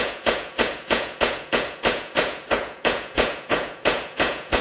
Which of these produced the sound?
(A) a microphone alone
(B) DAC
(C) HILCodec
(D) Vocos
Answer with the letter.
D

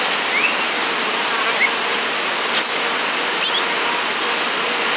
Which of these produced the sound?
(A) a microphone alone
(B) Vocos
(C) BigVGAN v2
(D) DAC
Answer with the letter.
A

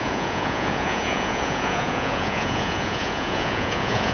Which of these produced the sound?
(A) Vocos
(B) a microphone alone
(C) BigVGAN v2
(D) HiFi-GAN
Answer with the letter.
A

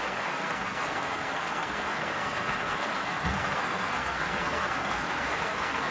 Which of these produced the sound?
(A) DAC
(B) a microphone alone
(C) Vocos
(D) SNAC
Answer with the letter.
D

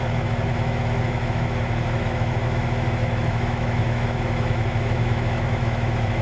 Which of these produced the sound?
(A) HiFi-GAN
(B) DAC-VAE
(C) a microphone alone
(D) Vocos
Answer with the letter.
B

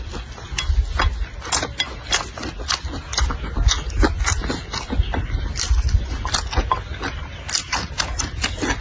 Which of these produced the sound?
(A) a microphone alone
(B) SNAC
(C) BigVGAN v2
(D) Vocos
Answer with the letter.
A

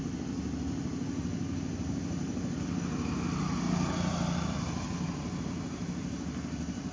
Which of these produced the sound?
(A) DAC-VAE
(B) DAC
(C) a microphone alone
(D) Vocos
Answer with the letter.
C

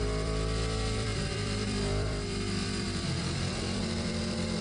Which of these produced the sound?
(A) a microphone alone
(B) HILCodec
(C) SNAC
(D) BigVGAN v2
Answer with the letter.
D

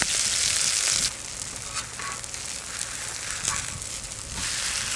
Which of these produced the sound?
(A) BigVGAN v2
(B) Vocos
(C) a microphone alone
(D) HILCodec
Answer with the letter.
C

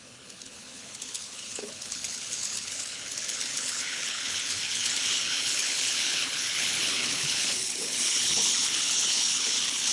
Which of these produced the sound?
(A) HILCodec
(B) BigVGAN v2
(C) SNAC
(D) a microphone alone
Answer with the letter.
A